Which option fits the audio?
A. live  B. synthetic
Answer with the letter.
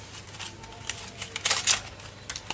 A